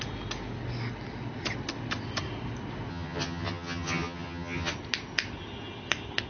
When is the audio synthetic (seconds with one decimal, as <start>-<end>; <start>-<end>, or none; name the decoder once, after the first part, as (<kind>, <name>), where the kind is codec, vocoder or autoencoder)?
2.9-4.7 (vocoder, HiFi-GAN)